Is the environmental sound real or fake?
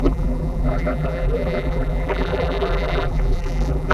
fake